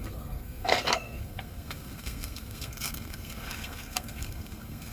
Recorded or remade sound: remade